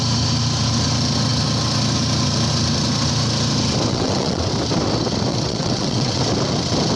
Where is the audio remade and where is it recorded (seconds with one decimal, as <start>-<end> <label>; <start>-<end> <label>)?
0.0-3.9 recorded; 3.9-4.5 remade; 4.5-5.3 recorded; 5.3-6.2 remade; 6.2-7.0 recorded